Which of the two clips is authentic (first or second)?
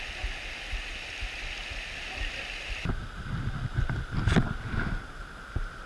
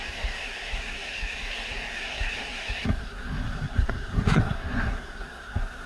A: first